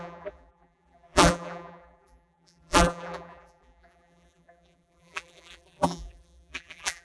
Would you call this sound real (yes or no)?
no